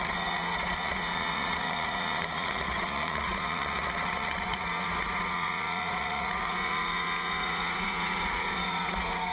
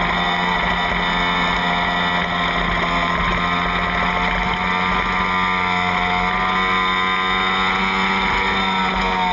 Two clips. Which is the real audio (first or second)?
second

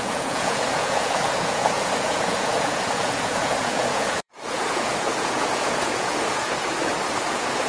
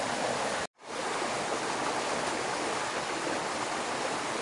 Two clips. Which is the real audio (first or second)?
second